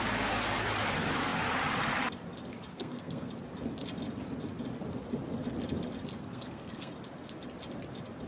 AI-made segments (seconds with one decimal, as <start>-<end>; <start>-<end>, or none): 2.7-3.3; 6.2-6.9